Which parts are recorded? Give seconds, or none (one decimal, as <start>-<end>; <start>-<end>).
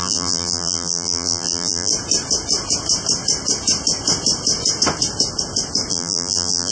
1.9-5.9